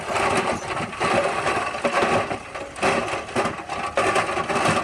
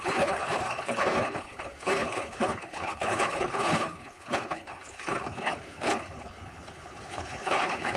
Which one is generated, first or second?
second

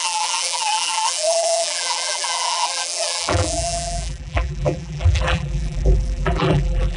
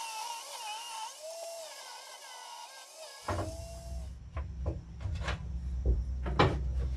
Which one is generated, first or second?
first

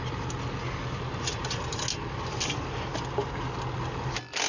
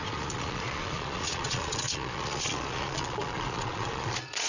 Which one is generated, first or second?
second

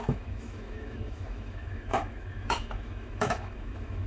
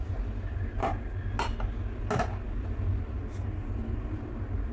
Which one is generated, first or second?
first